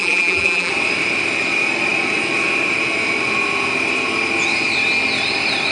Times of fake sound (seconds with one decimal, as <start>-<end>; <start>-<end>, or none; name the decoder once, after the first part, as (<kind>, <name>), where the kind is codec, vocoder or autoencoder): 0.0-0.7 (vocoder, BigVGAN v2)